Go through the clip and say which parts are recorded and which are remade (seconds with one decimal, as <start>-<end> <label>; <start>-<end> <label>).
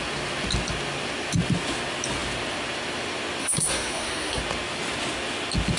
0.0-3.4 recorded; 3.4-4.4 remade; 4.4-5.8 recorded